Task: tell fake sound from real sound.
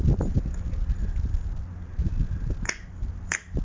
real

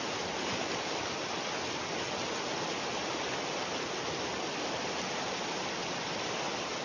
real